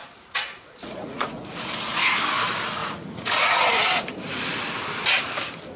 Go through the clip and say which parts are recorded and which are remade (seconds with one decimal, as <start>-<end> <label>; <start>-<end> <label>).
0.0-1.7 remade; 1.7-2.8 recorded; 2.8-3.6 remade; 3.6-5.8 recorded